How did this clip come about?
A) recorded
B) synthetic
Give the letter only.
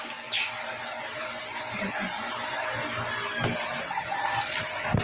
A